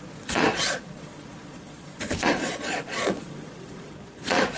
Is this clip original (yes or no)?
no